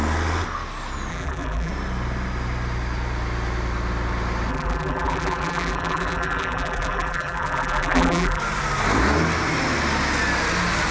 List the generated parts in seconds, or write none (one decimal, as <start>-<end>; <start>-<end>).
1.1-1.7; 4.5-8.4